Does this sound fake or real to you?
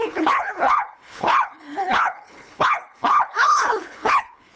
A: fake